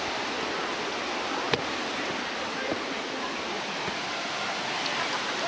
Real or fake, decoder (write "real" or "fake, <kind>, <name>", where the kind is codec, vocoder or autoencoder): real